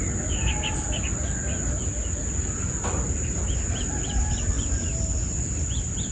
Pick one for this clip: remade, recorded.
recorded